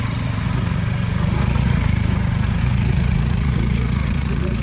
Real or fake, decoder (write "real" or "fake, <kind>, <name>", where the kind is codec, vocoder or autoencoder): fake, vocoder, Vocos